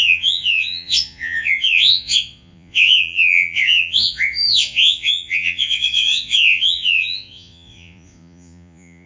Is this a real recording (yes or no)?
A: no